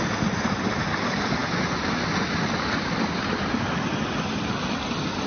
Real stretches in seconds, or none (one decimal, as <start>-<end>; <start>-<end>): 0.0-5.3